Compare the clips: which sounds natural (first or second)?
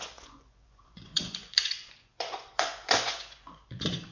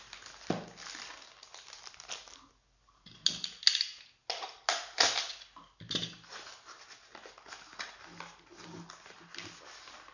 second